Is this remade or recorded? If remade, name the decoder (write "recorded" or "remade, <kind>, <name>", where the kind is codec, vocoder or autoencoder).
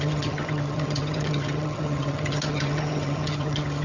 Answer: remade, vocoder, HiFi-GAN